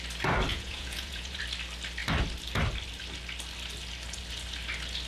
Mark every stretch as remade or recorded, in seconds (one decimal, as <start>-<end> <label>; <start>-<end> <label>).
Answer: 0.0-0.5 recorded; 0.5-1.4 remade; 1.4-5.1 recorded

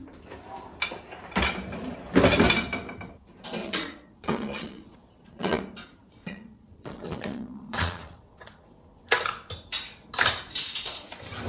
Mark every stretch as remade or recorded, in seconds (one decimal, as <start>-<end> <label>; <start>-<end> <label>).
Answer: 0.0-3.6 recorded; 3.6-5.6 remade; 5.6-6.0 recorded; 6.0-8.8 remade; 8.8-11.5 recorded

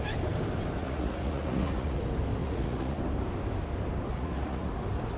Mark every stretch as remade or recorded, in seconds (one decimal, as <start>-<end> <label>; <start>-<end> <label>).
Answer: 0.0-0.8 recorded; 0.8-2.0 remade; 2.0-2.4 recorded; 2.4-3.0 remade; 3.0-4.1 recorded; 4.1-4.7 remade; 4.7-5.2 recorded